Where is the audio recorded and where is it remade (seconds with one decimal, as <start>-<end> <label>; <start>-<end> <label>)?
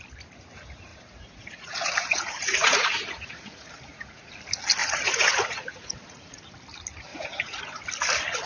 0.0-0.9 recorded; 0.9-4.3 remade; 4.3-4.8 recorded; 4.8-6.4 remade; 6.4-7.1 recorded; 7.1-7.6 remade; 7.6-8.5 recorded